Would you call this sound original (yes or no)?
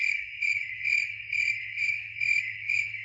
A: no